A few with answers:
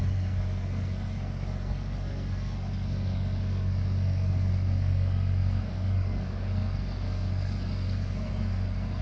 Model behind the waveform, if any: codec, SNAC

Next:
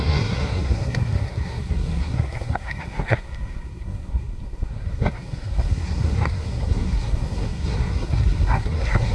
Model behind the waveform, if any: codec, SNAC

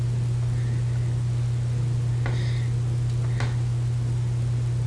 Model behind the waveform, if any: none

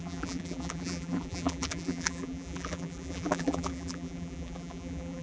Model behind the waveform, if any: vocoder, BigVGAN v2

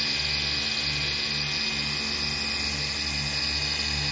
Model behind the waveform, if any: none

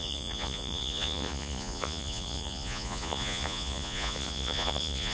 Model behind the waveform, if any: vocoder, Vocos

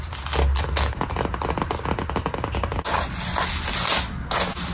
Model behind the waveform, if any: none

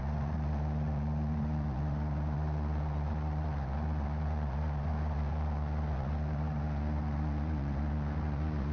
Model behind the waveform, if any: vocoder, Vocos